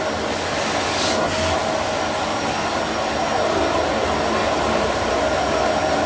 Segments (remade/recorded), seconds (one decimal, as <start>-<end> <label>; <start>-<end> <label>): 0.0-4.4 recorded; 4.4-5.1 remade; 5.1-6.1 recorded